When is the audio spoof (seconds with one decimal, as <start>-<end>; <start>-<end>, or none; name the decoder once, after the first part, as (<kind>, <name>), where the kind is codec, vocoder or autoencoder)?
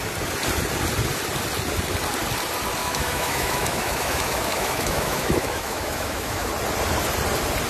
2.8-6.5 (autoencoder, DAC-VAE)